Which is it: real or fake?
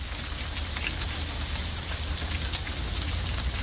real